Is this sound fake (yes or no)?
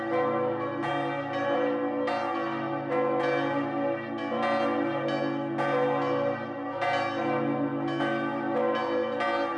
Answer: no